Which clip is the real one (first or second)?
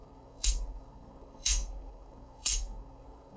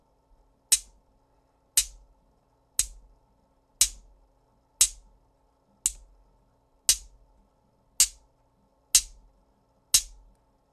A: second